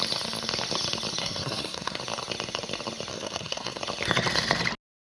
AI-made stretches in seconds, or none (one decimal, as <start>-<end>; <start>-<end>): 1.2-2.0; 3.1-3.8